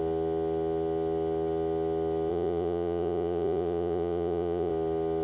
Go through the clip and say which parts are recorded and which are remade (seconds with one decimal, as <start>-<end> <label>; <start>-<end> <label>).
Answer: 0.0-2.3 recorded; 2.3-4.7 remade; 4.7-5.2 recorded